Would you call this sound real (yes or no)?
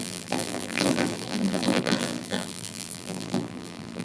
no